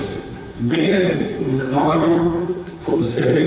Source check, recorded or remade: remade